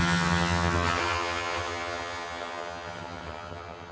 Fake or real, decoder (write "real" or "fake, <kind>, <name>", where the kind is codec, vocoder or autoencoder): fake, vocoder, HiFi-GAN